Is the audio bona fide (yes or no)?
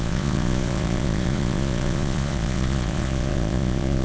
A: no